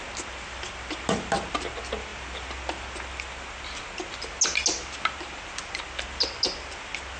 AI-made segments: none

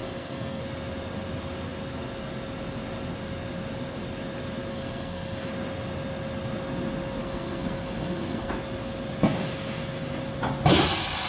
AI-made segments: 0.0-0.6 (codec, SNAC); 4.7-5.5; 7.2-8.5

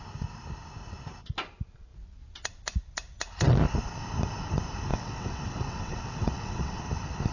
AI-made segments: 4.9-6.8 (vocoder, WaveNeXt)